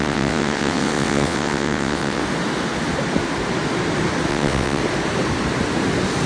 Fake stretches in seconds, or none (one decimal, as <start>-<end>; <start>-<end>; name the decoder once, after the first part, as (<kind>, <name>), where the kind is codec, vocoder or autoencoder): 0.0-2.2 (vocoder, WaveNeXt); 4.3-4.8

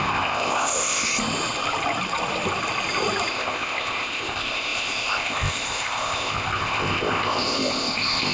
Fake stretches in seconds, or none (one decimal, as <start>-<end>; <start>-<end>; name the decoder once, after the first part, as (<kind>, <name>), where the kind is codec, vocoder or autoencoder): 0.0-1.1 (codec, ZipCodec); 3.3-8.3

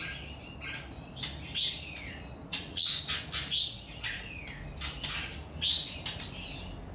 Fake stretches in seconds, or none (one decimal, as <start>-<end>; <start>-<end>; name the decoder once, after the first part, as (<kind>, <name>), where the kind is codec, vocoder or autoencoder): 2.4-3.0 (vocoder, Vocos)

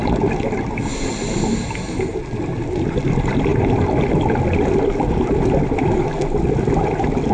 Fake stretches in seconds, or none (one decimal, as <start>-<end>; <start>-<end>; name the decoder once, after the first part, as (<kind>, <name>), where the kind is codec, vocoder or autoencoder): none

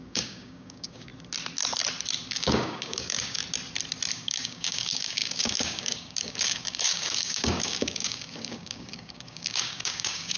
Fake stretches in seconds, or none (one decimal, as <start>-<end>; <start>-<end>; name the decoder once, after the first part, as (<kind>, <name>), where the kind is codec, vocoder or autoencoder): 0.0-1.1 (codec, DAC); 2.3-3.4; 4.1-10.4